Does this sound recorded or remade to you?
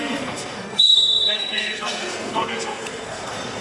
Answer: remade